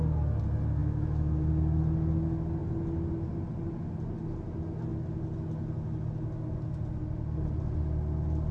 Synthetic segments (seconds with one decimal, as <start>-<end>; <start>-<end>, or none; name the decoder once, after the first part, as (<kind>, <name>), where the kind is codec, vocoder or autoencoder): 0.8-1.5 (autoencoder, DAC-VAE)